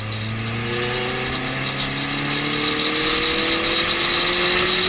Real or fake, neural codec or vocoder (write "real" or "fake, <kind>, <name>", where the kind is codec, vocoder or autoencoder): real